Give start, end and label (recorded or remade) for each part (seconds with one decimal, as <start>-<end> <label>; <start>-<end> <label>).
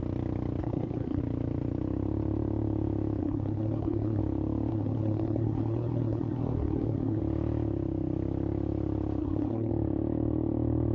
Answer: 0.0-0.6 recorded; 0.6-1.2 remade; 1.2-3.2 recorded; 3.2-4.2 remade; 4.2-4.7 recorded; 4.7-7.2 remade; 7.2-9.2 recorded; 9.2-9.7 remade; 9.7-10.9 recorded